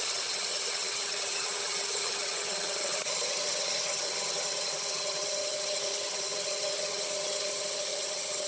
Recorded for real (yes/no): no